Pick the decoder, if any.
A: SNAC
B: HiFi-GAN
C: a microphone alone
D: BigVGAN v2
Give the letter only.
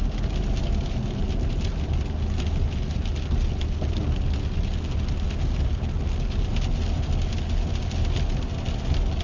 C